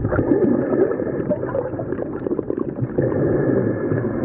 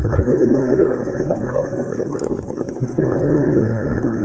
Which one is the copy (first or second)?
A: second